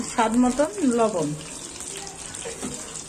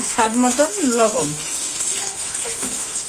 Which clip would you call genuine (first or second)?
first